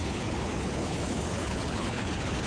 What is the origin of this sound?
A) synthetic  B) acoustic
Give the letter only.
A